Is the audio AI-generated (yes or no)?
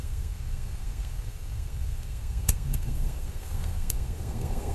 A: yes